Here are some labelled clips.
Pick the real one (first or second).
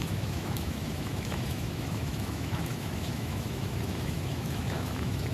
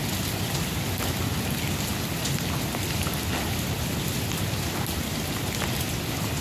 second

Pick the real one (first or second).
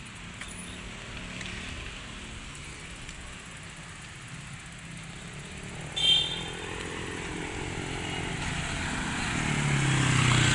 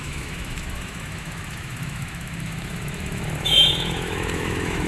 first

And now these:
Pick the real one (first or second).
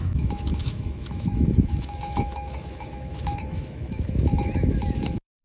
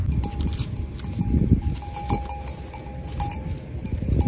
second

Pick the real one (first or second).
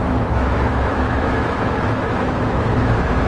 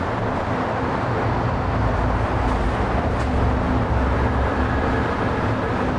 second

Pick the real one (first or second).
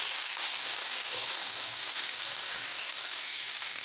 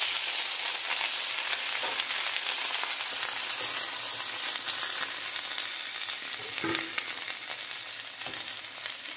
second